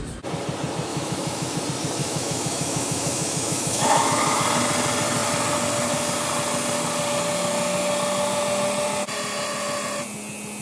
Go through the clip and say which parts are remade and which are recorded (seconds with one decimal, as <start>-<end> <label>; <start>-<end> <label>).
0.0-0.9 recorded; 0.9-1.6 remade; 1.6-2.0 recorded; 2.0-4.4 remade; 4.4-10.6 recorded